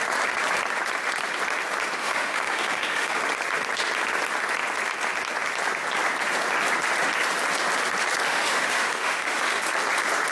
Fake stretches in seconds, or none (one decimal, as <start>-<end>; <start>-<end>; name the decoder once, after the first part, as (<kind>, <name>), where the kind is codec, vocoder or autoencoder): 2.0-3.2 (autoencoder, DAC-VAE); 8.3-9.6